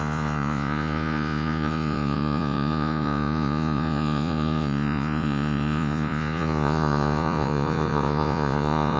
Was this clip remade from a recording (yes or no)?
yes